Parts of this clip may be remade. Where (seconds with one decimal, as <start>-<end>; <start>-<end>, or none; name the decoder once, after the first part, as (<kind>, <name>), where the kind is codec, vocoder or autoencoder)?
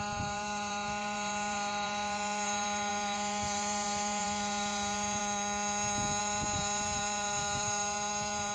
0.0-5.2 (vocoder, BigVGAN v2); 6.2-8.5